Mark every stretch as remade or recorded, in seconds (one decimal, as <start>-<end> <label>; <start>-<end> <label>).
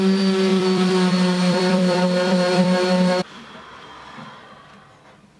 0.0-0.5 recorded; 0.5-3.2 remade; 3.2-5.4 recorded